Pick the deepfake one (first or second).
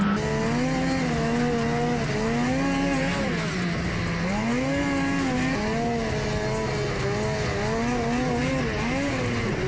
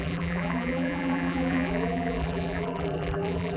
second